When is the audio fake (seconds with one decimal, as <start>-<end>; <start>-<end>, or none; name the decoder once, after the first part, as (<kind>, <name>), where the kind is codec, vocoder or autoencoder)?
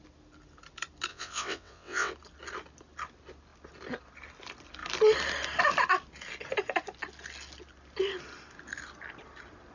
1.1-2.1 (vocoder, WaveNeXt)